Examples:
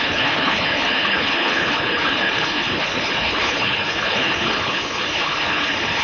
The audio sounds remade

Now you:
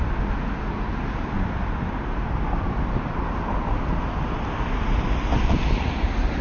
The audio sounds recorded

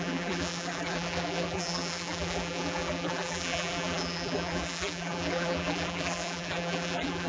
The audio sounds remade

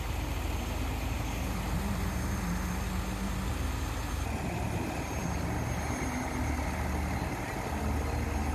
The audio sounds recorded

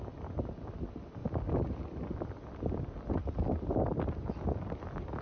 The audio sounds recorded